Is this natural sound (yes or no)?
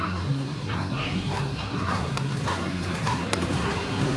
no